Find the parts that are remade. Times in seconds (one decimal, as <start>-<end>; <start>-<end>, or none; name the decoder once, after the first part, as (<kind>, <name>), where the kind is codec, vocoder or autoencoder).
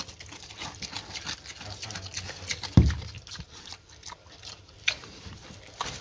2.5-6.0 (vocoder, BigVGAN v2)